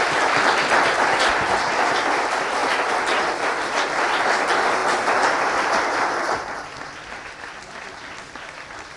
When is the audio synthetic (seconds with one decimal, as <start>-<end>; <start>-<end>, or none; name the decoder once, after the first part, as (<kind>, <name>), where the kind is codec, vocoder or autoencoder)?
none

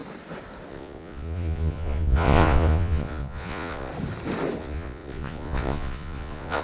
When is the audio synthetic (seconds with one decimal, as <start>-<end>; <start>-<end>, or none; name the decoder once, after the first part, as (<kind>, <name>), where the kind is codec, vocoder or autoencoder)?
0.7-3.9 (vocoder, Vocos); 4.6-6.6

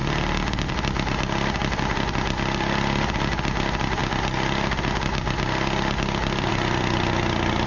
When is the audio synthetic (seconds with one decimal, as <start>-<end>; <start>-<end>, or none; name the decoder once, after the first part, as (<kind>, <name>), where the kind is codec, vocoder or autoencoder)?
none